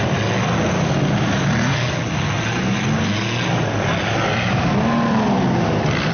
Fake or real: real